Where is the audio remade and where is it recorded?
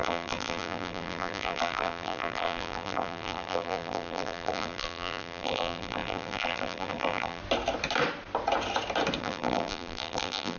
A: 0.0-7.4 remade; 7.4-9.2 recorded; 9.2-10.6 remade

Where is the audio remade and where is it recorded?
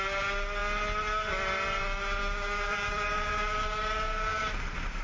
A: 0.0-2.2 recorded; 2.2-4.5 remade; 4.5-5.0 recorded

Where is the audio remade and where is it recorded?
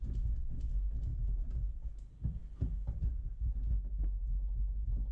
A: 0.0-1.1 recorded; 1.1-1.9 remade; 1.9-5.1 recorded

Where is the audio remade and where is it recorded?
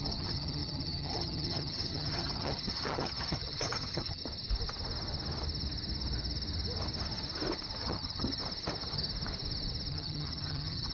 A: 0.0-4.2 remade; 4.2-7.8 recorded; 7.8-8.4 remade; 8.4-9.9 recorded; 9.9-10.9 remade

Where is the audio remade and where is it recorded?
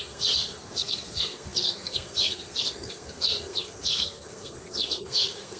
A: 0.0-5.6 remade